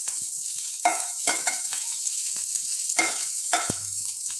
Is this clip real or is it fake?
fake